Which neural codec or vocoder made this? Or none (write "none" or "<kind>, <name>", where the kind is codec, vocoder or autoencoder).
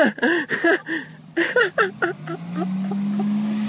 none